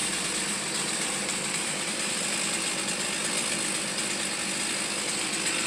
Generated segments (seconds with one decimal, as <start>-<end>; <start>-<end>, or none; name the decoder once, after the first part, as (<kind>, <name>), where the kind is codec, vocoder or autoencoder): 0.0-2.2 (vocoder, BigVGAN v2)